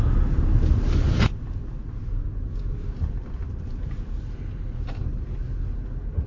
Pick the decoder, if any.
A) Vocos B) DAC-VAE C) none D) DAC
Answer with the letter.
C